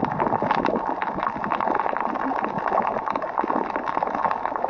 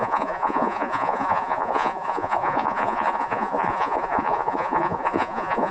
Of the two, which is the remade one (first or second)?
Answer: second